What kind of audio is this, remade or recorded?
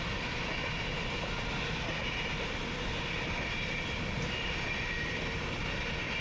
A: recorded